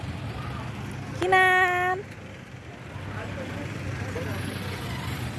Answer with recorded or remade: recorded